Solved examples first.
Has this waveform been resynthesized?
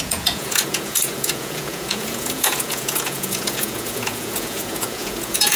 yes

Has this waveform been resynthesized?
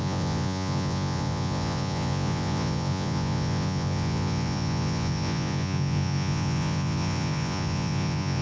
yes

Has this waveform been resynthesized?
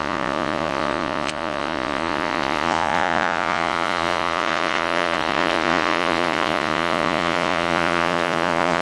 yes